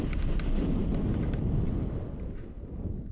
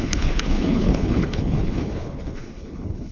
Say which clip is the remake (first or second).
second